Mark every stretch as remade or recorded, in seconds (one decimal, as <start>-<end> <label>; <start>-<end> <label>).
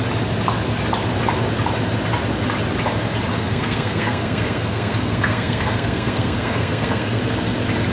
0.0-3.3 recorded; 3.3-7.2 remade; 7.2-7.9 recorded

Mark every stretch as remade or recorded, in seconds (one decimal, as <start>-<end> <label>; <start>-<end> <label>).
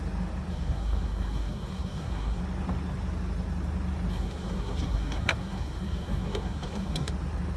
0.0-0.5 recorded; 0.5-2.4 remade; 2.4-4.1 recorded; 4.1-7.1 remade; 7.1-7.6 recorded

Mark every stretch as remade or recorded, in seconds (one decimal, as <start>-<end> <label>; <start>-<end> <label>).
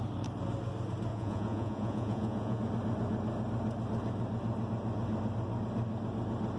0.0-1.1 recorded; 1.1-2.6 remade; 2.6-6.6 recorded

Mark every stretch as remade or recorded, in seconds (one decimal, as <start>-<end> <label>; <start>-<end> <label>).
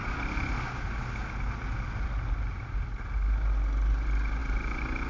0.0-5.1 recorded